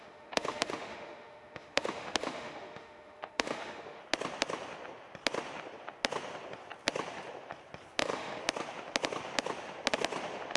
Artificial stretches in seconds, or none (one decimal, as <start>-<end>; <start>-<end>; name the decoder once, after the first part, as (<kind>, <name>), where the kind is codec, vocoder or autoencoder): 0.0-4.0 (autoencoder, DAC-VAE); 8.0-8.4